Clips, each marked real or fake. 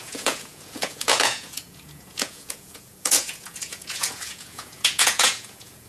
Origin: fake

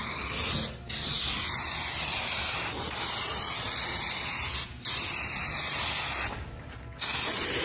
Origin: real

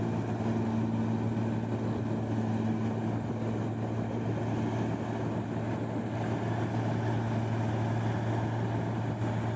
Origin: real